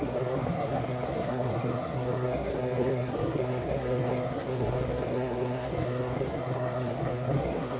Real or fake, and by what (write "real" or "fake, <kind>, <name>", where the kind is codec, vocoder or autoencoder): fake, codec, SNAC